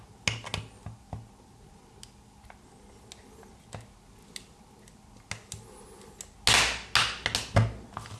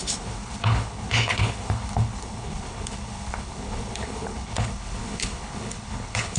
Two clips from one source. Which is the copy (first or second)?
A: second